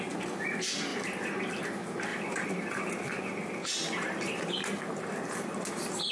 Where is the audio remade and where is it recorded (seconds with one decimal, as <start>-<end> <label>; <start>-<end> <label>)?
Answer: 0.0-0.9 recorded; 0.9-1.5 remade; 1.5-2.1 recorded; 2.1-2.8 remade; 2.8-3.6 recorded; 3.6-5.0 remade; 5.0-6.1 recorded